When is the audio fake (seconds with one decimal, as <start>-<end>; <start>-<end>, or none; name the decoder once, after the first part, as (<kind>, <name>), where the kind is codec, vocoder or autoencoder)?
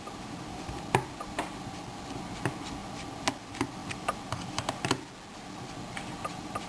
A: none